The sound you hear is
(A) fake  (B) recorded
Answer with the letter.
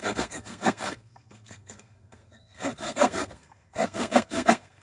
A